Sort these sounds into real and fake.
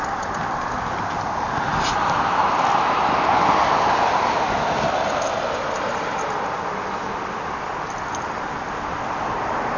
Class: real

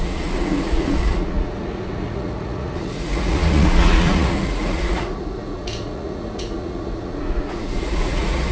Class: fake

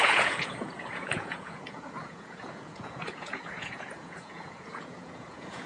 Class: fake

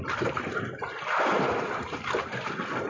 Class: real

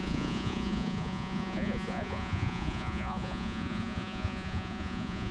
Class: fake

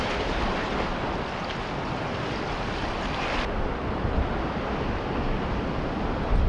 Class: real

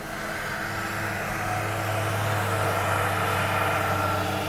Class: real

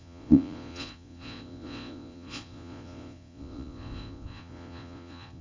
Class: fake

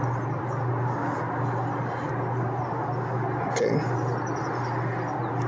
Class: real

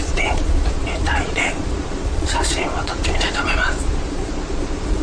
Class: fake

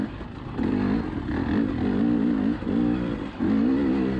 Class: real